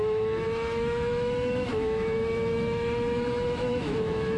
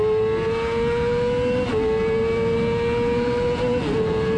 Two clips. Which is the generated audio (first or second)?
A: first